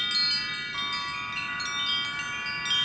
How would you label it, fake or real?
real